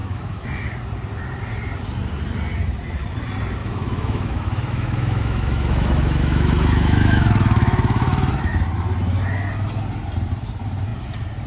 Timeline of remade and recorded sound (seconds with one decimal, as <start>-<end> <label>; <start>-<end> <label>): 0.0-0.7 remade; 0.7-3.6 recorded; 3.6-8.3 remade; 8.3-11.5 recorded